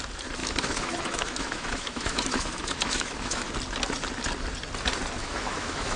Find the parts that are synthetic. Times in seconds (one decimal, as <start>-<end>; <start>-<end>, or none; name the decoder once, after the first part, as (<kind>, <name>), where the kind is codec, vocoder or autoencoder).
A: 0.4-3.5 (autoencoder, DAC-VAE); 5.2-6.0